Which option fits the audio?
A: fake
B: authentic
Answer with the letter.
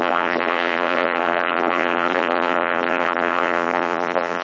A